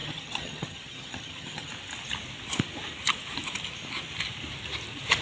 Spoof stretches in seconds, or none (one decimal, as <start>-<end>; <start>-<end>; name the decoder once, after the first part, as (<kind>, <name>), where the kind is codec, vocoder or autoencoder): 0.0-1.7 (vocoder, HiFi-GAN)